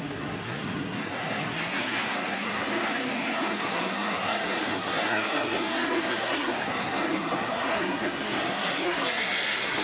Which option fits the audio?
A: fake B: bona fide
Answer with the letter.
A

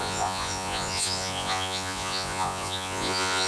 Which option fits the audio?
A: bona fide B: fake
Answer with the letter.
B